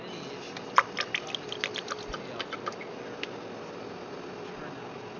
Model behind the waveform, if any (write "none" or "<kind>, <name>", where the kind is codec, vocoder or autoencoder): none